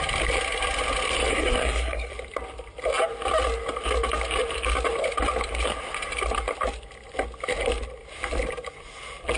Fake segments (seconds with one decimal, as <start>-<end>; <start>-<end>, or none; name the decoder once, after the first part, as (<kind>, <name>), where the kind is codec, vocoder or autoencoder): 1.3-2.1 (codec, SNAC)